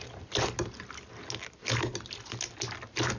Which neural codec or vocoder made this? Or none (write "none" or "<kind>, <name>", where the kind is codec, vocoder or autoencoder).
none